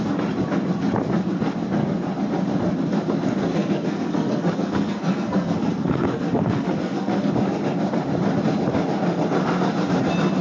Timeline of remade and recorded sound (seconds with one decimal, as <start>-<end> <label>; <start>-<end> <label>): 0.0-3.5 recorded; 3.5-7.3 remade; 7.3-10.4 recorded